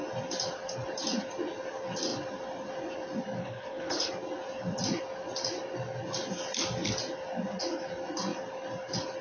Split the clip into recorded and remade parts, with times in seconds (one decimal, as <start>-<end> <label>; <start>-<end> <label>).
0.0-3.4 recorded; 3.4-4.1 remade; 4.1-9.2 recorded